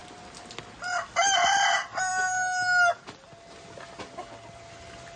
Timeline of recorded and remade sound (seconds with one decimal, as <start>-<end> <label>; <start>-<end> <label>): 0.0-5.2 recorded